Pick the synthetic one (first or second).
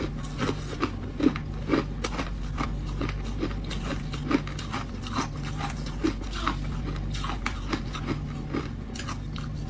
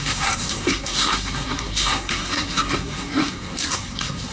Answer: second